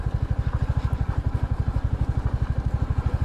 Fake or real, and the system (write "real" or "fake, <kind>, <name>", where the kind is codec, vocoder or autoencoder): real